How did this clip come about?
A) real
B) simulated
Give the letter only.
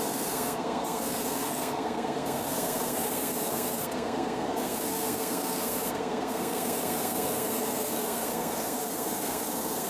B